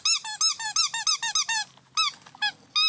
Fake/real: real